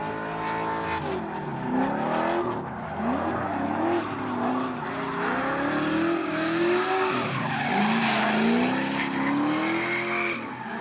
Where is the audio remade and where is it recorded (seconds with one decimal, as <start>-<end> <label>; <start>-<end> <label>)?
0.0-6.2 recorded; 6.2-8.2 remade; 8.2-10.8 recorded